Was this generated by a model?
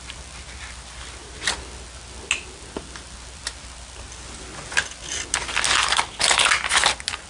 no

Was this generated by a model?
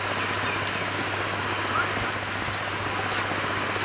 no